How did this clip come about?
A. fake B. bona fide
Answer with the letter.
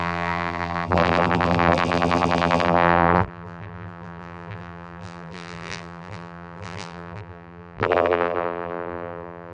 A